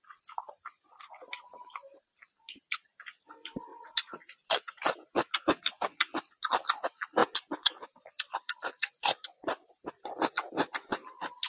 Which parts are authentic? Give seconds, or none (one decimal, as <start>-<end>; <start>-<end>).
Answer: 3.7-4.3; 5.9-6.5; 7.2-8.2